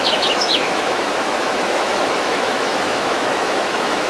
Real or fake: fake